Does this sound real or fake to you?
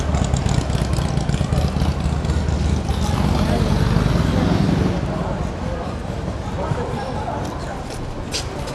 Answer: real